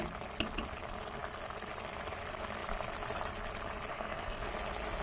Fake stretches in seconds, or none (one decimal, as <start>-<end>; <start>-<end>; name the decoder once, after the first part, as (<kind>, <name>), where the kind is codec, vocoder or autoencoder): 3.9-4.5 (codec, SNAC)